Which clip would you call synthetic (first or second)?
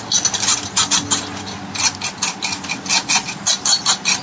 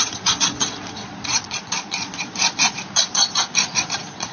second